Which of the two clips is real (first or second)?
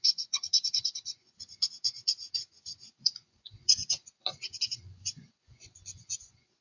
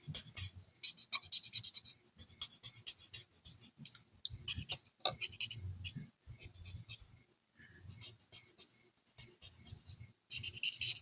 second